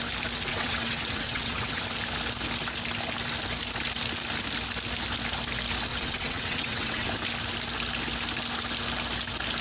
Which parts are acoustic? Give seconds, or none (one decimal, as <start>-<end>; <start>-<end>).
0.0-0.5; 1.8-5.9; 7.1-9.6